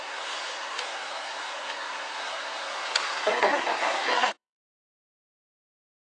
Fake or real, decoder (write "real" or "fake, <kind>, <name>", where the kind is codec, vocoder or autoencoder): fake, codec, SNAC